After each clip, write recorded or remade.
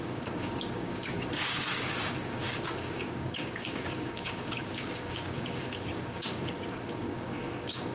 remade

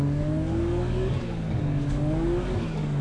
remade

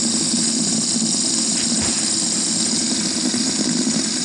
recorded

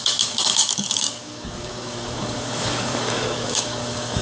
remade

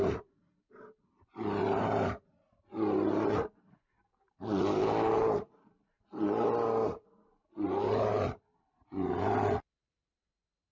recorded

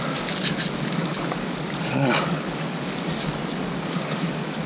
remade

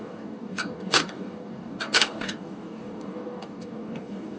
remade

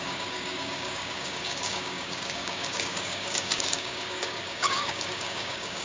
remade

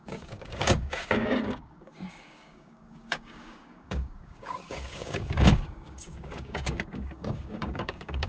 remade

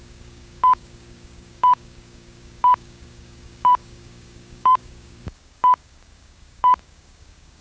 remade